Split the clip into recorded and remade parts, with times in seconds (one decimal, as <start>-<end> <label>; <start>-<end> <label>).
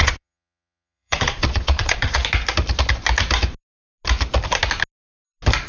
0.0-2.2 remade; 2.2-5.7 recorded